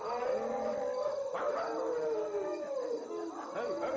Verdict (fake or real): real